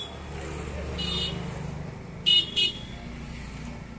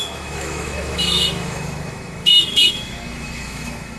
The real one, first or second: first